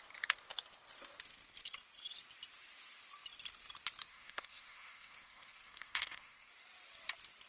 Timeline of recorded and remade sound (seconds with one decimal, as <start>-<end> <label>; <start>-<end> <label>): 0.0-4.1 recorded; 4.1-6.5 remade; 6.5-7.5 recorded